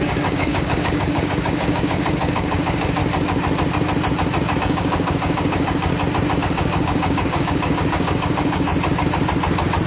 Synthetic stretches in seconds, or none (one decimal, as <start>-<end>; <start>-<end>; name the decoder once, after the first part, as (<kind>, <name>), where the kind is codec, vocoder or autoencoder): 0.0-3.0 (codec, DAC); 4.6-5.9; 6.4-8.7